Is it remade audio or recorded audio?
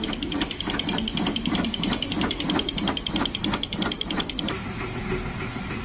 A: recorded